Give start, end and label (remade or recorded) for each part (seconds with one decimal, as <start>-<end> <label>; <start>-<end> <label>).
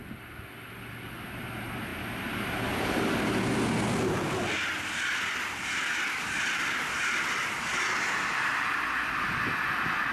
0.0-10.1 recorded